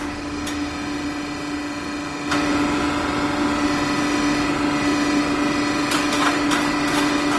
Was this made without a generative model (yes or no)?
yes